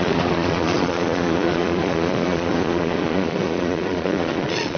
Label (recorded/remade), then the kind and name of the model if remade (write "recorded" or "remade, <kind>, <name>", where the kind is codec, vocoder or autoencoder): remade, vocoder, Vocos